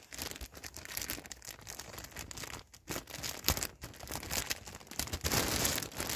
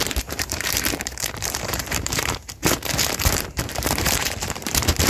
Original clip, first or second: first